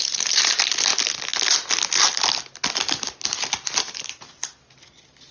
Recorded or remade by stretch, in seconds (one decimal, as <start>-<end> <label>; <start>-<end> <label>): 0.0-5.3 recorded